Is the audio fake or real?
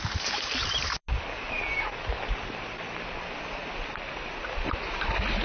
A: real